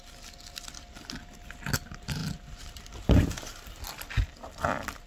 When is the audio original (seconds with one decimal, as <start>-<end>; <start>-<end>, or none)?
0.0-5.1